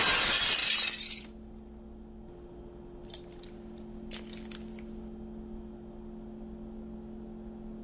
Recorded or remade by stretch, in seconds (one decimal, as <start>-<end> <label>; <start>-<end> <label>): 0.0-7.8 recorded